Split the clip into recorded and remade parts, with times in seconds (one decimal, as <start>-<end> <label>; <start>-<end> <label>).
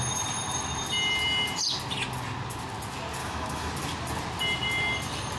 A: 0.0-3.2 recorded; 3.2-3.7 remade; 3.7-5.4 recorded